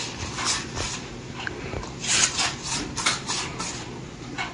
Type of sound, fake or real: real